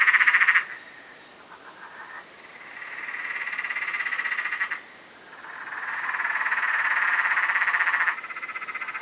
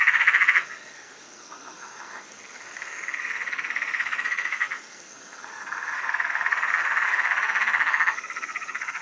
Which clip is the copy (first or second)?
second